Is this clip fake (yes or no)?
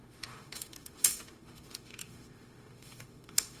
yes